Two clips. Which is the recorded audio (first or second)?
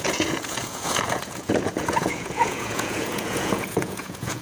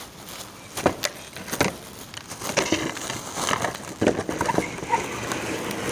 second